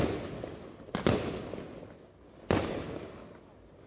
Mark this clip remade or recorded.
recorded